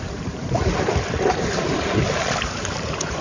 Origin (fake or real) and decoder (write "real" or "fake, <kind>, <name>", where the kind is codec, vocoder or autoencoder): fake, vocoder, BigVGAN v2